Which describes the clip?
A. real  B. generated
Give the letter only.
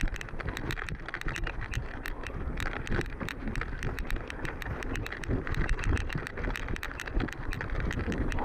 A